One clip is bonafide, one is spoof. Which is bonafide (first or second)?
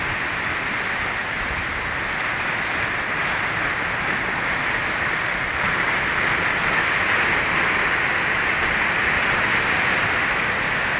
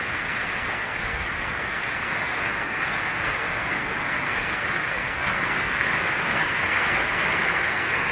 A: first